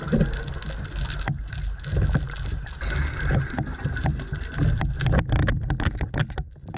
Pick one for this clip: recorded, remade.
recorded